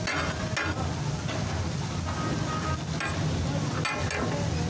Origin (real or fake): real